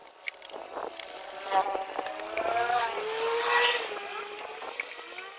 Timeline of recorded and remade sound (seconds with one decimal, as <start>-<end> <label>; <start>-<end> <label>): 0.0-2.1 remade; 2.1-5.4 recorded